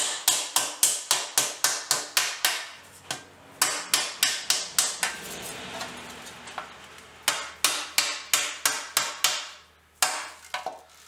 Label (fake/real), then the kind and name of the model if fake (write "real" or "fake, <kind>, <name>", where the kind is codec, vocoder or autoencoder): real